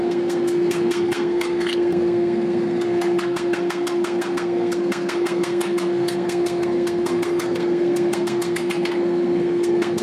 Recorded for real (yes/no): no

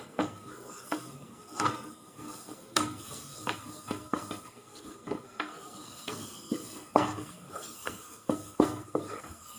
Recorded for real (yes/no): no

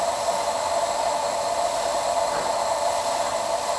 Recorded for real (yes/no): yes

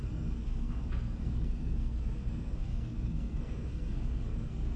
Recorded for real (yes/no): no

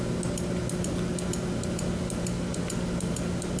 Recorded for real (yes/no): yes